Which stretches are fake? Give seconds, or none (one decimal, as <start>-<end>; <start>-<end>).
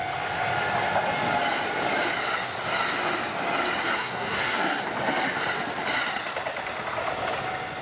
3.8-4.8